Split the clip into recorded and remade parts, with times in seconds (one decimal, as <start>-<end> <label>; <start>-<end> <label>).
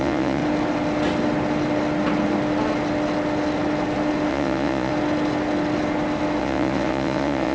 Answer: 0.0-0.4 remade; 0.4-4.3 recorded; 4.3-4.9 remade; 4.9-6.4 recorded; 6.4-7.5 remade